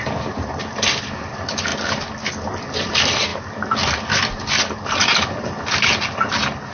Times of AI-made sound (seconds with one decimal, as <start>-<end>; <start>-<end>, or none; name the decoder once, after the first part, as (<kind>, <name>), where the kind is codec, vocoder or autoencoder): none